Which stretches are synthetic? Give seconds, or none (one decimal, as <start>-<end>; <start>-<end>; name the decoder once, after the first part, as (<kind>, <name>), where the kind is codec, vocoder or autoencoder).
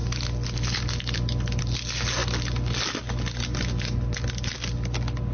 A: none